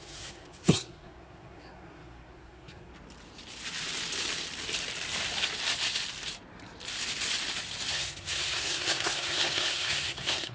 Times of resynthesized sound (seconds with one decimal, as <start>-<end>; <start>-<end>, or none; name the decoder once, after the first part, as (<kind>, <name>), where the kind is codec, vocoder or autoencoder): 0.0-2.9 (codec, SNAC); 7.9-10.5